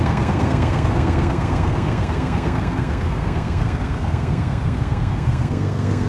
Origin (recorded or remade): remade